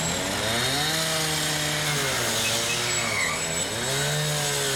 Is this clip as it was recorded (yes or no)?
yes